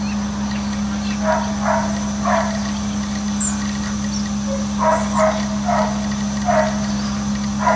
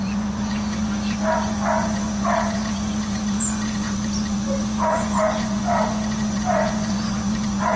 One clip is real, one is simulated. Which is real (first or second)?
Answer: first